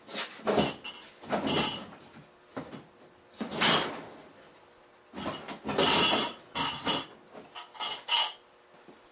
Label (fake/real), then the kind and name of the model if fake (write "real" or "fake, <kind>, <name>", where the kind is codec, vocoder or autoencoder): real